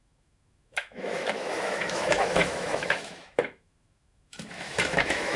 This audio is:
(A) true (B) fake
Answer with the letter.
B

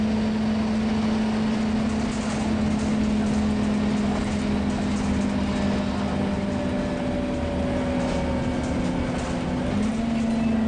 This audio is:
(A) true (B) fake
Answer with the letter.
A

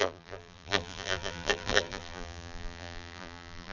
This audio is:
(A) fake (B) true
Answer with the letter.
A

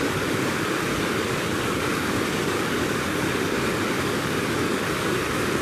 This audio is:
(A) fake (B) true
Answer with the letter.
A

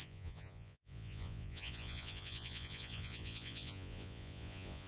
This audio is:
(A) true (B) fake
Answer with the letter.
B